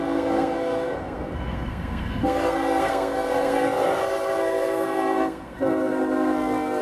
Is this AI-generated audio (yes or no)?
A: yes